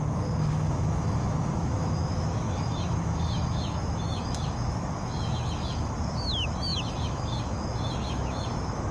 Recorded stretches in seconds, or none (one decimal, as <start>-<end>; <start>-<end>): none